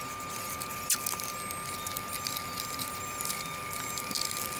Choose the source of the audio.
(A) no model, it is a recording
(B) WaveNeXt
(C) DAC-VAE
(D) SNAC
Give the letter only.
A